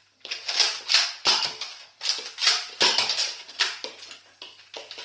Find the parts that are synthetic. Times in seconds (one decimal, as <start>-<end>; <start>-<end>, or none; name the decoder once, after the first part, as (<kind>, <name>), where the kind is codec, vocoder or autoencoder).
none